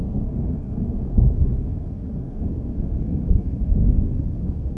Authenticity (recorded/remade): remade